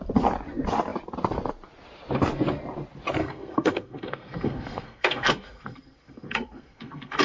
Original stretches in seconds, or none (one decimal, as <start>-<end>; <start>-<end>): 0.0-3.2